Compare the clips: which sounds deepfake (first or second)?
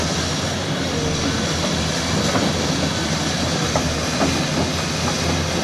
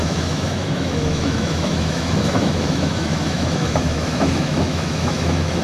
second